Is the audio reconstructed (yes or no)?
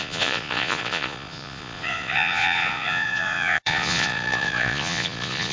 yes